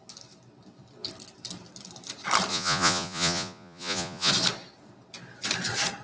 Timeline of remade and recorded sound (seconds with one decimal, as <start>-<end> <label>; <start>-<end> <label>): 0.0-2.5 recorded; 2.5-4.3 remade; 4.3-6.0 recorded